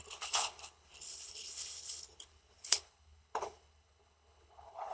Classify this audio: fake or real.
fake